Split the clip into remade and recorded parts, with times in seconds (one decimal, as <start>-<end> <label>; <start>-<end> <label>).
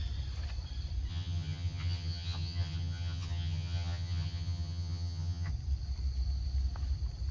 0.0-1.1 recorded; 1.1-5.5 remade; 5.5-7.3 recorded